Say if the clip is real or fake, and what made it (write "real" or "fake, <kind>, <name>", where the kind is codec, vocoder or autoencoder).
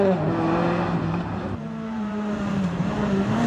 fake, vocoder, BigVGAN v2